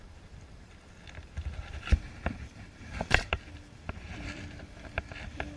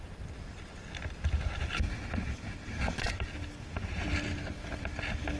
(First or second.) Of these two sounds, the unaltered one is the second